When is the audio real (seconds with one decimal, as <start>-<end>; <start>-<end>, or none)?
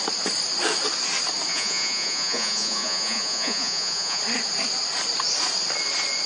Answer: 0.0-1.5; 4.2-6.3